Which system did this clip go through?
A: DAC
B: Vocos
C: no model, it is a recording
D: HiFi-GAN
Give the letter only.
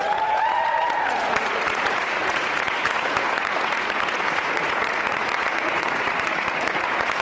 B